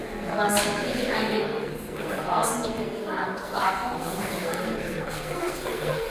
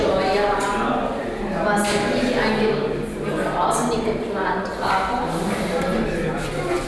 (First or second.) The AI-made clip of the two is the first